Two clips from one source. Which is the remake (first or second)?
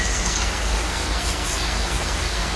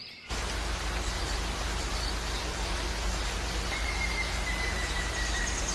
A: first